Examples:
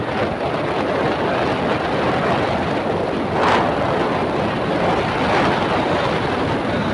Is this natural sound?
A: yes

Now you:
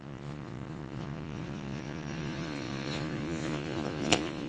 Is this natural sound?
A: no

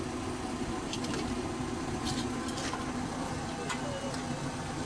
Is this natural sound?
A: yes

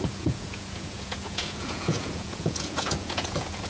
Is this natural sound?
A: no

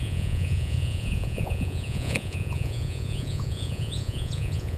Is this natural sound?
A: no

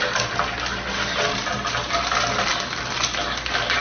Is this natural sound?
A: yes